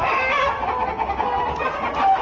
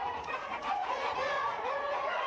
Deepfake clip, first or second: second